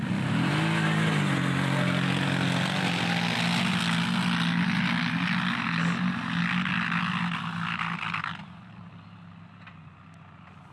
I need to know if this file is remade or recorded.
recorded